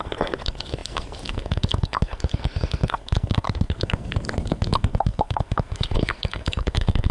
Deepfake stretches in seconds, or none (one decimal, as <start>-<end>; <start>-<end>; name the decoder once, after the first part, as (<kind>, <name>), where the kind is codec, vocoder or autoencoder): 0.0-7.1 (codec, SNAC)